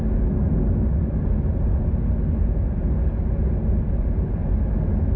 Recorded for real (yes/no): yes